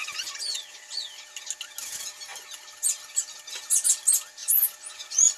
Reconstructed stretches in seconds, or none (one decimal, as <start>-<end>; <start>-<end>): 0.0-0.9; 4.4-5.4